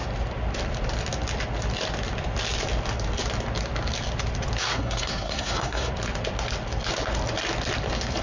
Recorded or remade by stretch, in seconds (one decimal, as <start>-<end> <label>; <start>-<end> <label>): 0.0-4.7 recorded; 4.7-5.9 remade; 5.9-8.2 recorded